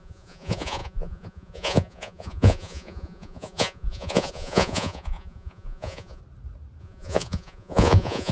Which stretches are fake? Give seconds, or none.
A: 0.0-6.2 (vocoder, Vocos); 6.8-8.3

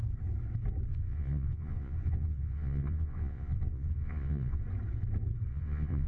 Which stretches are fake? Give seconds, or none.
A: 0.9-4.6 (vocoder, Vocos); 5.5-6.1

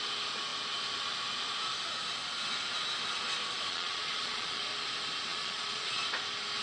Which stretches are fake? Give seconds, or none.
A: 3.7-4.6 (vocoder, Vocos); 5.3-6.0

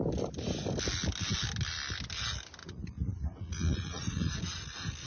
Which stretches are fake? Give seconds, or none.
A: 2.6-4.3 (vocoder, Vocos)